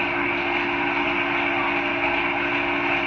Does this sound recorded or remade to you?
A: recorded